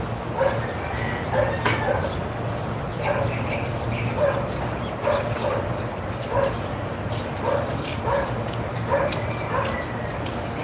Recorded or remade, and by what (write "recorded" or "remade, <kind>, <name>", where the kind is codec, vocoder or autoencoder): recorded